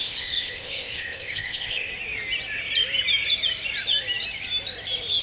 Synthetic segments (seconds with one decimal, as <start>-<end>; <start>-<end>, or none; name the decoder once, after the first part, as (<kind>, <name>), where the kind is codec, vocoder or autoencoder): 0.0-1.9 (codec, ZipCodec)